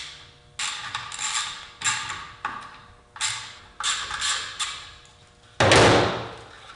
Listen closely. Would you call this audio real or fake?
real